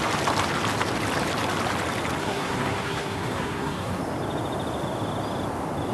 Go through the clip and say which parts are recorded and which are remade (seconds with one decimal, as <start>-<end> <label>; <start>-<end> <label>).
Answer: 0.0-2.2 recorded; 2.2-4.0 remade; 4.0-5.9 recorded